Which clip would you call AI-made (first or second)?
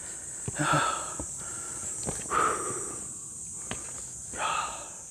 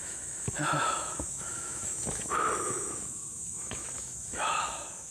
second